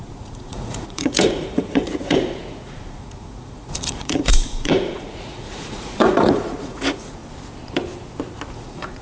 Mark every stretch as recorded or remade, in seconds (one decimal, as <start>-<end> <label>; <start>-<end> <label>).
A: 0.0-7.2 remade; 7.2-8.5 recorded; 8.5-9.0 remade